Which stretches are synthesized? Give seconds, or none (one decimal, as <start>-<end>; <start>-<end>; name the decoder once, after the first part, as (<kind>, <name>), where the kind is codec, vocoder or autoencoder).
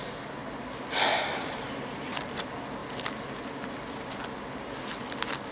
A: 1.1-2.4 (vocoder, BigVGAN v2)